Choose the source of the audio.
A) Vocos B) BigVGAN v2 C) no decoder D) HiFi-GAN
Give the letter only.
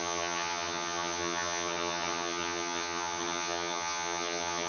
D